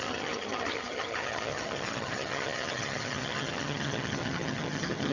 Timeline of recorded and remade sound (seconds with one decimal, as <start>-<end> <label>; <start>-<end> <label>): 0.0-5.1 remade